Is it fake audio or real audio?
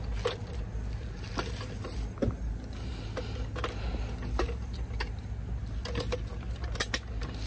real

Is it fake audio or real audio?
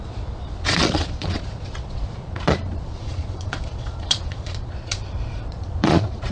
fake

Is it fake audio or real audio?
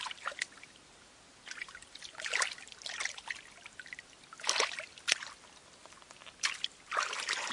real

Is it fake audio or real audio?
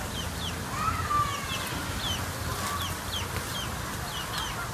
real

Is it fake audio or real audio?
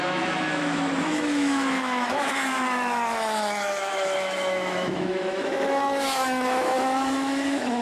fake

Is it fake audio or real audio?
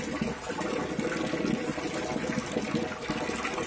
real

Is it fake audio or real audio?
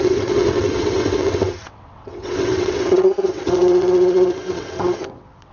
fake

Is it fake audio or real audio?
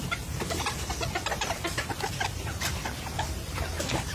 fake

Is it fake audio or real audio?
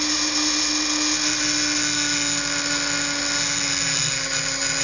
real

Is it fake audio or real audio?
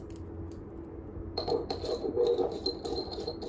real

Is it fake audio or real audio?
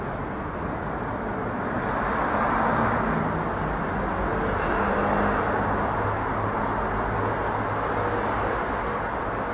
real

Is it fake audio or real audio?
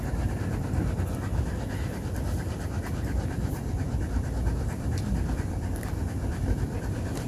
fake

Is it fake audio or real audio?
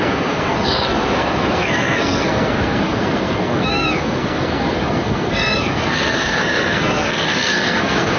fake